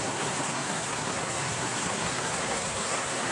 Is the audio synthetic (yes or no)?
yes